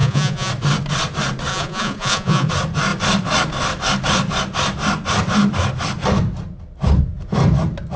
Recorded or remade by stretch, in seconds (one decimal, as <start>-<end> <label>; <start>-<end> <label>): 0.0-0.5 remade; 0.5-1.5 recorded; 1.5-2.5 remade; 2.5-8.0 recorded